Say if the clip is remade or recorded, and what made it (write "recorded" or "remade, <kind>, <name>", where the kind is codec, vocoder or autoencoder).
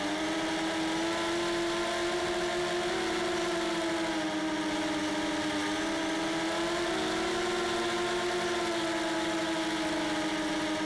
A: recorded